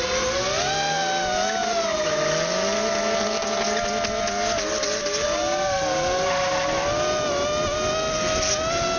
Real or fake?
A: real